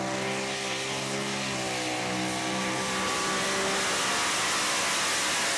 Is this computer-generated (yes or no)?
no